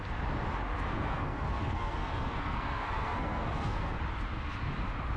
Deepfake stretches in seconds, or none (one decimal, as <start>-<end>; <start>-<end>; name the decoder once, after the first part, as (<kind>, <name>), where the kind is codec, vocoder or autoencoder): 0.9-4.0 (codec, SNAC)